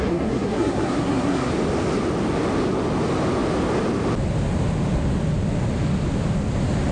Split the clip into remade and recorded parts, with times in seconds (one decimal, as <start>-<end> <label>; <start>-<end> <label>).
0.0-1.5 remade; 1.5-6.9 recorded